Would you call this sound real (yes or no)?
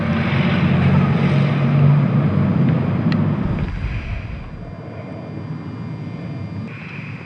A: yes